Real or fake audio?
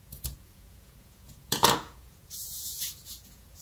fake